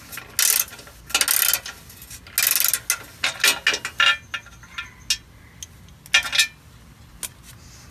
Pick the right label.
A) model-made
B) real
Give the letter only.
B